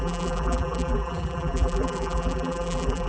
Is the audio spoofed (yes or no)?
yes